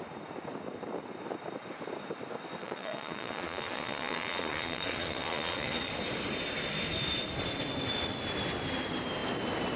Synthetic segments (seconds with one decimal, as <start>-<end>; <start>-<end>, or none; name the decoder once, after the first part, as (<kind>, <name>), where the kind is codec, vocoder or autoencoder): 2.6-5.9 (vocoder, Vocos)